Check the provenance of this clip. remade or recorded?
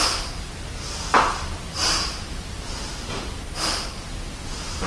recorded